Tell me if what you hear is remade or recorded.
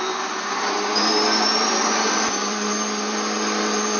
remade